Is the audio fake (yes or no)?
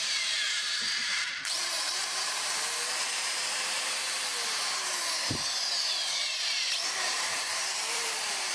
yes